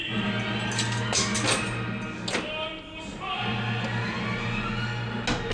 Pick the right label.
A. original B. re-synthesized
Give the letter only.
A